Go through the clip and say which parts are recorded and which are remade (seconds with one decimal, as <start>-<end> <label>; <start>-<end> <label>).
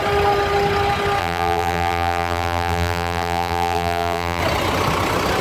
0.0-1.2 recorded; 1.2-4.4 remade; 4.4-5.4 recorded